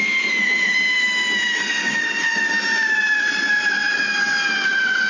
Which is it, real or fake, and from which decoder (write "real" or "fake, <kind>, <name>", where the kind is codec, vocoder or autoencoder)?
real